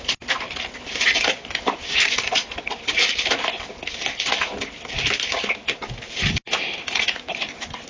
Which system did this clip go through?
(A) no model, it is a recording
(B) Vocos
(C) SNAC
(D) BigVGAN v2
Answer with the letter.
A